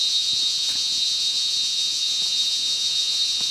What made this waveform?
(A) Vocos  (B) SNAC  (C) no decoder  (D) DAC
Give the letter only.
A